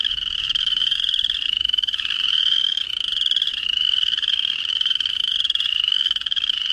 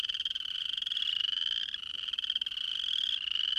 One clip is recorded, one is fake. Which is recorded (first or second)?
second